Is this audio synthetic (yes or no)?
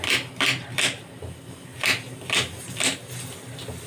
no